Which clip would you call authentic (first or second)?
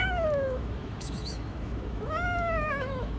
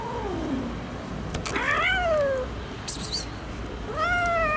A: second